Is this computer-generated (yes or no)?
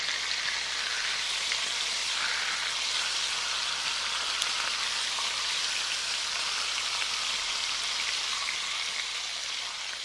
no